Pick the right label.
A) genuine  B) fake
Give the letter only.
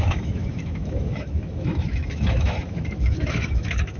B